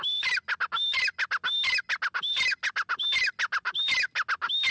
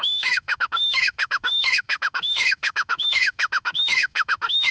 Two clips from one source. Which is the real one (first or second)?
first